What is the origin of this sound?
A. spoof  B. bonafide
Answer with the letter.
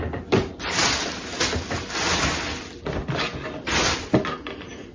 B